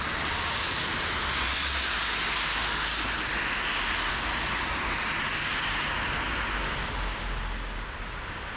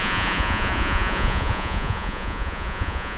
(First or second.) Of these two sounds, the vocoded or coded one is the second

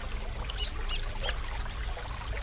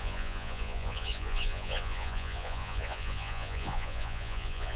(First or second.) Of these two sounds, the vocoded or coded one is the second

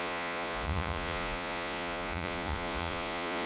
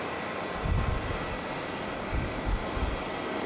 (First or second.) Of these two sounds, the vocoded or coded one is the first